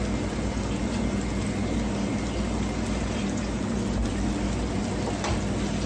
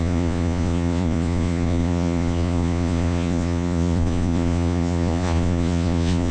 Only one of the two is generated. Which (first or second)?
second